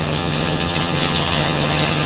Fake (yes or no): yes